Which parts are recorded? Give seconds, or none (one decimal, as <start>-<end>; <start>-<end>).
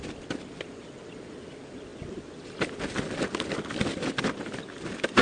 0.0-5.2